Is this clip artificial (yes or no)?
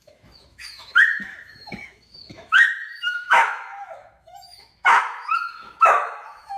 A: yes